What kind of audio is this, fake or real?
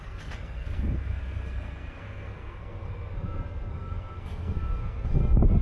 fake